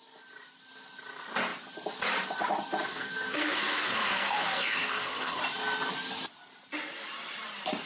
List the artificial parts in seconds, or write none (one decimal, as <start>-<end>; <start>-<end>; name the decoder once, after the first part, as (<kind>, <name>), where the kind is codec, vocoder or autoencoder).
2.9-5.4 (codec, SNAC)